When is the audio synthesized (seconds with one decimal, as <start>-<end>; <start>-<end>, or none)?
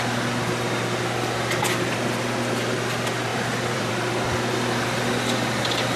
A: 3.3-3.9